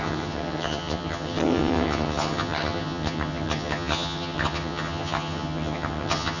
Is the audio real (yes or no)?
no